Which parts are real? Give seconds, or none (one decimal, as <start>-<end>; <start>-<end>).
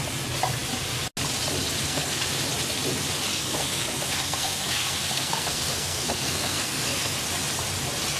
0.0-1.8; 2.3-3.3; 7.1-8.2